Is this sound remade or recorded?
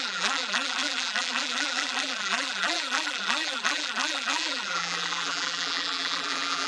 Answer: remade